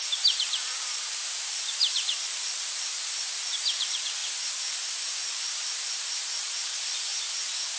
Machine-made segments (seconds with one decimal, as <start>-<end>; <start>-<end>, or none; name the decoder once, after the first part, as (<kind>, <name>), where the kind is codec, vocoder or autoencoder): 0.0-4.2 (vocoder, BigVGAN v2); 4.9-7.1